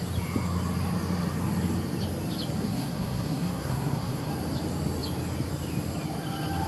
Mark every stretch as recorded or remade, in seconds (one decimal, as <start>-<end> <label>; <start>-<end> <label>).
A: 0.0-2.6 recorded; 2.6-4.3 remade; 4.3-6.7 recorded

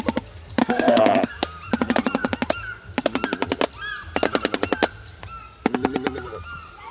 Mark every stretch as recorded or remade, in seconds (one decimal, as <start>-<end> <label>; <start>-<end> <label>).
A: 0.0-0.6 recorded; 0.6-1.3 remade; 1.3-6.9 recorded

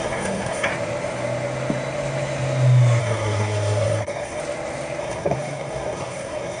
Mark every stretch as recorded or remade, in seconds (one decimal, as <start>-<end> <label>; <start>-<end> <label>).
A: 0.0-0.7 remade; 0.7-3.0 recorded; 3.0-4.4 remade; 4.4-5.0 recorded; 5.0-6.6 remade

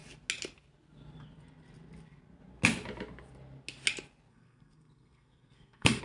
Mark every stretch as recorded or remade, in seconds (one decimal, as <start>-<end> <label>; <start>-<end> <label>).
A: 0.0-4.3 recorded; 4.3-6.0 remade

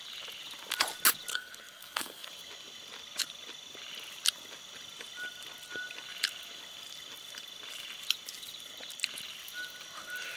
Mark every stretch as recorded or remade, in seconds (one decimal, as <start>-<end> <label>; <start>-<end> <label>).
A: 0.0-1.3 recorded; 1.3-2.3 remade; 2.3-10.4 recorded